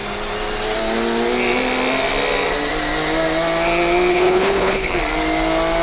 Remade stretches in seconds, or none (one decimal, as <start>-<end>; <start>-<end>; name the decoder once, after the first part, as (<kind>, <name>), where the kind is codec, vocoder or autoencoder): 4.1-4.9 (codec, HILCodec)